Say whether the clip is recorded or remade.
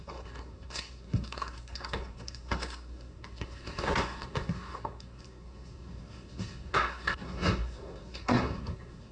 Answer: remade